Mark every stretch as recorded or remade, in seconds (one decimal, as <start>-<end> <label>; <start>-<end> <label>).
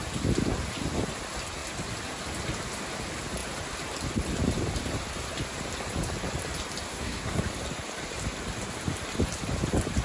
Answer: 0.0-6.9 recorded; 6.9-7.4 remade; 7.4-10.0 recorded